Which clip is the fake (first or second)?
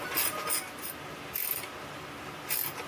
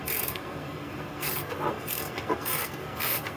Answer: second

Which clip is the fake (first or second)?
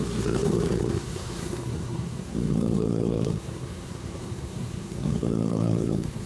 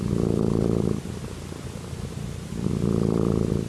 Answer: first